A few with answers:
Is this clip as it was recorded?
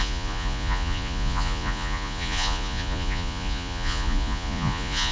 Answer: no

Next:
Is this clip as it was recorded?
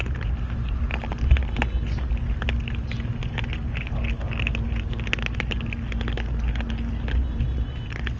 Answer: yes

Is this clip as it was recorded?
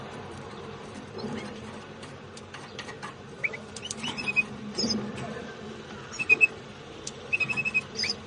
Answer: no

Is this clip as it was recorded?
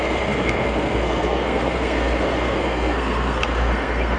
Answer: no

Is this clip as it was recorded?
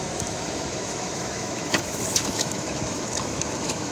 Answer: no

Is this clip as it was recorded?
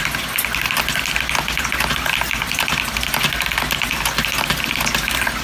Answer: yes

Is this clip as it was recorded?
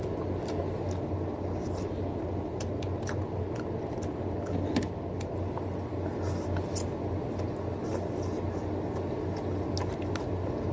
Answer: yes